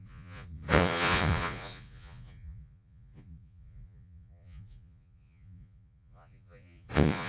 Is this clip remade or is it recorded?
remade